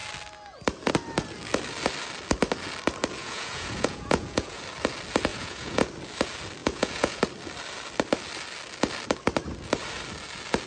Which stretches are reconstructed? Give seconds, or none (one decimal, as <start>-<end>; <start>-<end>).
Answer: 3.2-4.6; 5.3-5.9; 6.6-7.2